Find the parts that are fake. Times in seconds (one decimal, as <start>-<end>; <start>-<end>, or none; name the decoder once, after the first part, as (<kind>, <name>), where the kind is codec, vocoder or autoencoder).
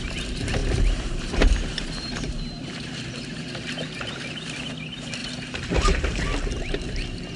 0.6-4.7 (vocoder, BigVGAN v2); 5.2-6.2